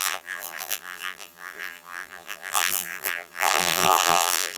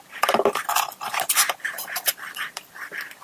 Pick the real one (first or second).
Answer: second